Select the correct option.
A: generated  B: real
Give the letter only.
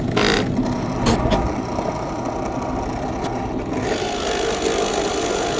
B